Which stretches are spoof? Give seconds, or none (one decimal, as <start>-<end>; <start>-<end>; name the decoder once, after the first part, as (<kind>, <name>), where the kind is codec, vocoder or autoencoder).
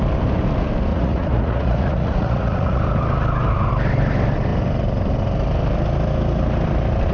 0.9-2.8 (vocoder, Vocos)